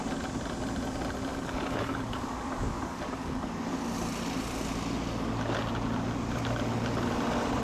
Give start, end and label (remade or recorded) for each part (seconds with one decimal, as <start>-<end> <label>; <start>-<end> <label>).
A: 0.0-1.3 recorded; 1.3-3.8 remade; 3.8-7.6 recorded